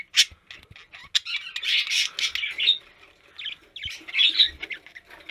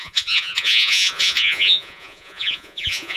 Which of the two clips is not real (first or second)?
second